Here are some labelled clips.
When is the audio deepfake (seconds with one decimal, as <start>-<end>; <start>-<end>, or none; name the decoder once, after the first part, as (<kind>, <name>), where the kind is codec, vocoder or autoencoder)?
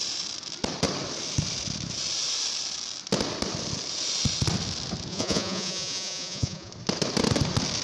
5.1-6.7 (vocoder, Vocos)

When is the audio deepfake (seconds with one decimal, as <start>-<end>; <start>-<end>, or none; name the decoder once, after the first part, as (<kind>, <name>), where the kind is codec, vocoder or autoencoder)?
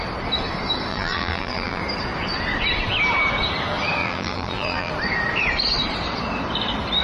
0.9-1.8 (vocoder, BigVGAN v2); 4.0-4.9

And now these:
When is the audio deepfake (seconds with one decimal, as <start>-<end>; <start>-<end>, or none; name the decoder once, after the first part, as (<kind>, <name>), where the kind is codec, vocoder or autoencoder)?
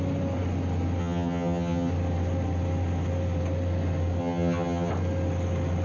1.0-1.9 (vocoder, HiFi-GAN); 4.2-4.9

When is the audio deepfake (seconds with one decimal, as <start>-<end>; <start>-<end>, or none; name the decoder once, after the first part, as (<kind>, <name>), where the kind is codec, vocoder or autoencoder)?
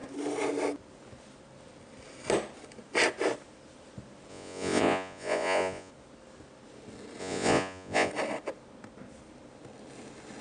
4.3-5.9 (vocoder, Vocos); 7.2-8.1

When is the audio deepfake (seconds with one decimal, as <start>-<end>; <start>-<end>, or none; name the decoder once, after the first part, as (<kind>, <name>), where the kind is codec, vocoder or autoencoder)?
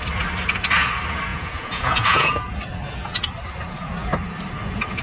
1.3-2.4 (vocoder, Vocos)